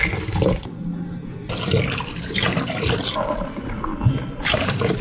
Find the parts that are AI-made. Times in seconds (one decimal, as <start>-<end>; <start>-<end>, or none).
0.0-0.8; 2.0-3.9; 4.4-5.0